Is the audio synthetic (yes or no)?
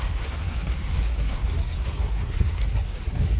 yes